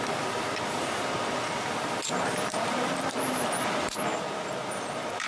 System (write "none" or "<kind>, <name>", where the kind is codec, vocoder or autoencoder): vocoder, BigVGAN v2